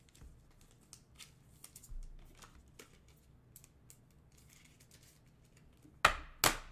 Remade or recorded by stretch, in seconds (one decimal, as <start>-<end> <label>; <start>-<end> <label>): 0.0-6.7 recorded